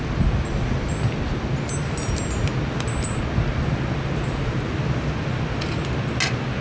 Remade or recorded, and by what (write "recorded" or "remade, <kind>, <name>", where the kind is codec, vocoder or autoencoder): recorded